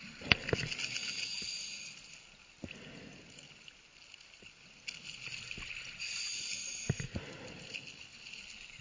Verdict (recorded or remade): recorded